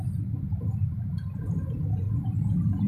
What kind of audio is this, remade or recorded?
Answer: remade